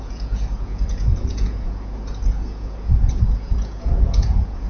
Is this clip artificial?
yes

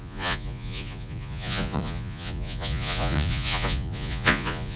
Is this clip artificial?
yes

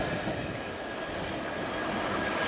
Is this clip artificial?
no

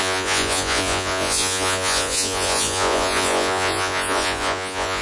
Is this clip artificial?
yes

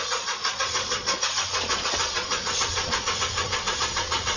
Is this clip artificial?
yes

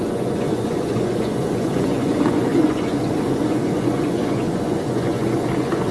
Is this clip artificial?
yes